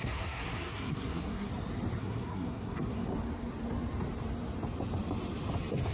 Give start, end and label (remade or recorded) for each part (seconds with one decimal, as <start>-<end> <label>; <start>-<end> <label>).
0.0-1.5 remade; 1.5-2.0 recorded; 2.0-3.1 remade; 3.1-5.9 recorded